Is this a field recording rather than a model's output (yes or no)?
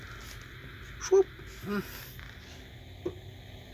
yes